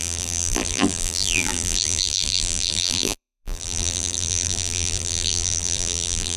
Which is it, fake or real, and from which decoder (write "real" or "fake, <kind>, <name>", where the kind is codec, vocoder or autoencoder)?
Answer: fake, vocoder, BigVGAN v2